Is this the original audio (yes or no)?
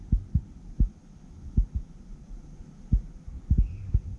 yes